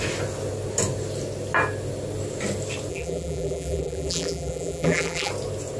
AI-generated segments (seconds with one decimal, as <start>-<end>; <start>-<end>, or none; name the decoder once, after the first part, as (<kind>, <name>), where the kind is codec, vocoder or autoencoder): 2.9-5.3 (vocoder, BigVGAN v2)